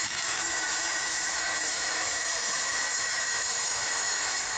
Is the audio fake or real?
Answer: fake